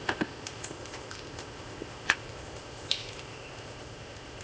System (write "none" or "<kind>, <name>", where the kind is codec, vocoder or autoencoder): codec, ZipCodec